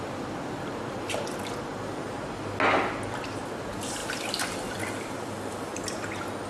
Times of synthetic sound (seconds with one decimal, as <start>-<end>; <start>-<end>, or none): none